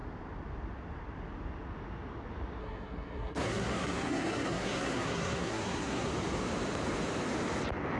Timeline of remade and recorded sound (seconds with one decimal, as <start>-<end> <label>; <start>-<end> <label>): 0.0-2.6 recorded; 2.6-6.1 remade; 6.1-8.0 recorded